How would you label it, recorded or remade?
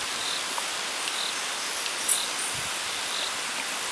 recorded